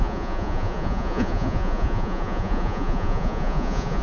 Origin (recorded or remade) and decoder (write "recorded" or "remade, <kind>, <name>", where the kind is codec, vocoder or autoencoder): remade, vocoder, Vocos